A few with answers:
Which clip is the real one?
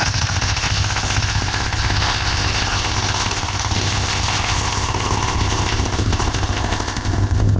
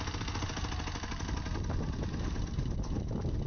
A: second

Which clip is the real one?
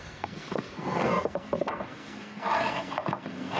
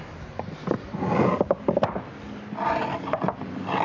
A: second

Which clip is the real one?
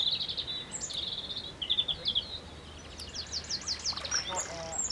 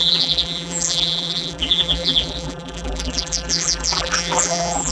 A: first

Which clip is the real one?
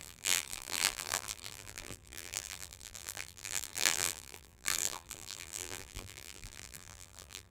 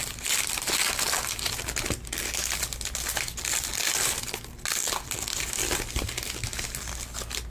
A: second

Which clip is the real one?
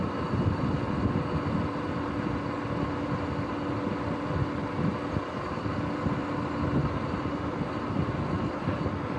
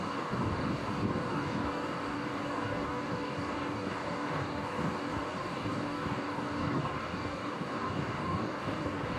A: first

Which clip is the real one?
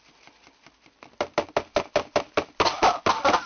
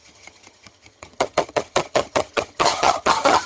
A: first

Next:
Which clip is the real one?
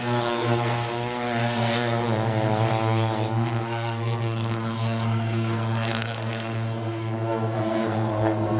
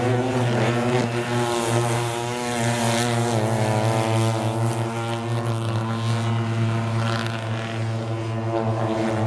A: second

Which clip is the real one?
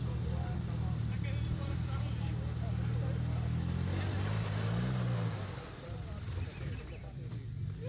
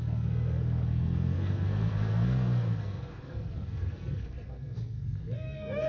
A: first